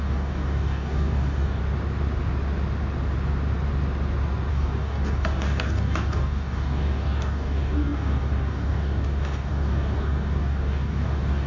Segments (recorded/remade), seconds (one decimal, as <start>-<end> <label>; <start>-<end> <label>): 0.0-1.6 remade; 1.6-4.5 recorded; 4.5-11.5 remade